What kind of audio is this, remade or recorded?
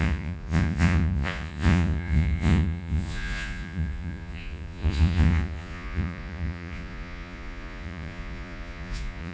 remade